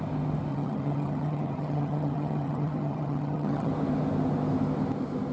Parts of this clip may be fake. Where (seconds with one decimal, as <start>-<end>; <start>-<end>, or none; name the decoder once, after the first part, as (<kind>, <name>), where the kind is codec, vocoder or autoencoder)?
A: 0.5-3.7 (vocoder, HiFi-GAN)